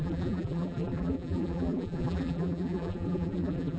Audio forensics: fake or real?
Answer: fake